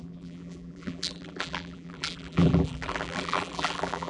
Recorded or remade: remade